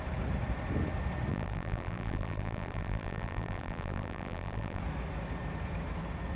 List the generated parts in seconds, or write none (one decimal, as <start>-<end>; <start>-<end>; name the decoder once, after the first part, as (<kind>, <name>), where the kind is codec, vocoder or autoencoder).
1.3-4.8 (vocoder, BigVGAN v2)